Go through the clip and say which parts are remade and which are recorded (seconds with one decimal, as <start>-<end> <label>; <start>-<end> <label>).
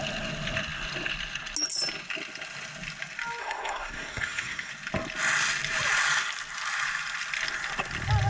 0.0-3.4 recorded; 3.4-4.7 remade; 4.7-8.3 recorded